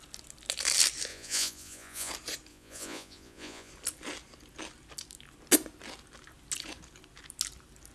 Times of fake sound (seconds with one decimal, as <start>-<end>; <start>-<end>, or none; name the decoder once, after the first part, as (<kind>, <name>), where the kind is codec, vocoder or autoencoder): 1.1-2.1 (vocoder, Vocos); 2.5-3.7